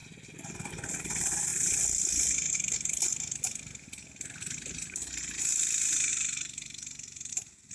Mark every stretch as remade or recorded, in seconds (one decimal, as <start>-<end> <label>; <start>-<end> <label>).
0.0-6.1 recorded; 6.1-7.3 remade; 7.3-7.7 recorded